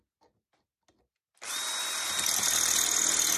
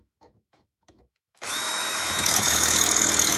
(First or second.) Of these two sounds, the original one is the first